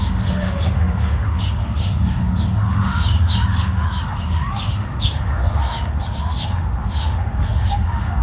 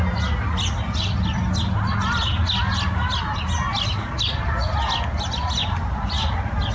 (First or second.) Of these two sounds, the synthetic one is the first